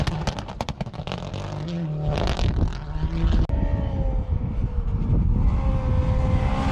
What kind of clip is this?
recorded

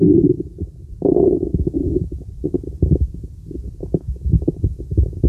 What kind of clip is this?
recorded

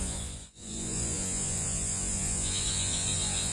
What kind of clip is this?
remade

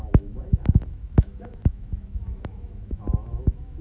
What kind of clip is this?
remade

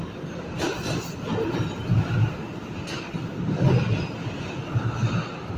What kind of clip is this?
recorded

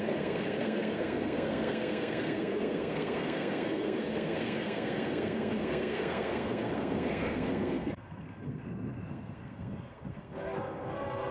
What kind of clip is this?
remade